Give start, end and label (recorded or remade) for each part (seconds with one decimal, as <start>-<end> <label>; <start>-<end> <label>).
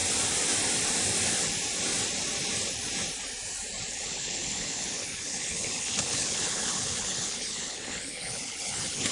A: 0.0-3.9 recorded; 3.9-9.1 remade